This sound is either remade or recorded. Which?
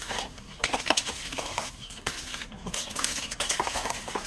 remade